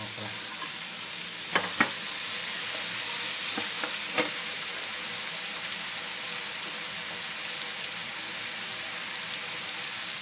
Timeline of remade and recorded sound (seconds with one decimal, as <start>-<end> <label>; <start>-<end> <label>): 0.0-10.2 recorded